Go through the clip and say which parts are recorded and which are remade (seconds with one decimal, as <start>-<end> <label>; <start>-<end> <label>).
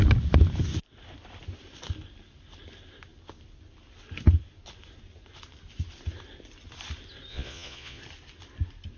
0.0-7.3 recorded; 7.3-8.0 remade; 8.0-9.0 recorded